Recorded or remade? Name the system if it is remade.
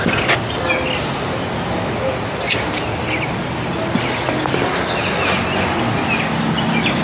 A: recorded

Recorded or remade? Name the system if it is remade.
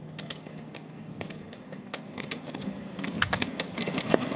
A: remade, codec, SNAC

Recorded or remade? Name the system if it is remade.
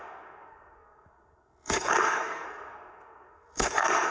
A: remade, codec, SNAC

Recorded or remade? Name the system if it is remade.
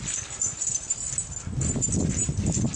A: recorded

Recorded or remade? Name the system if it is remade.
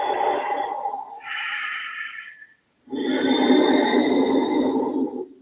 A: recorded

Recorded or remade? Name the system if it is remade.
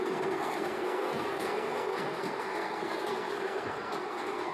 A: remade, codec, SNAC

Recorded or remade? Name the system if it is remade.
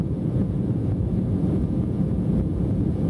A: remade, vocoder, Vocos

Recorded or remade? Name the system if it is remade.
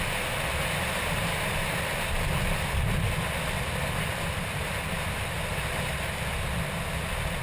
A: recorded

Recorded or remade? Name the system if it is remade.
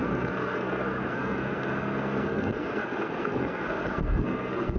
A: remade, codec, SNAC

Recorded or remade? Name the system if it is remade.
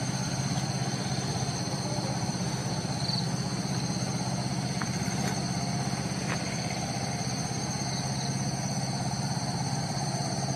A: remade, vocoder, BigVGAN v2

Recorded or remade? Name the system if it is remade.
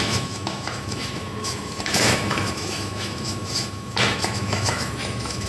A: remade, autoencoder, DAC-VAE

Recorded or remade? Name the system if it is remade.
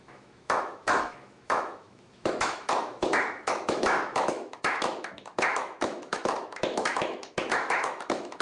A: remade, autoencoder, DAC-VAE